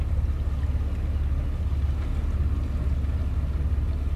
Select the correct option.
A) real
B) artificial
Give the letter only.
A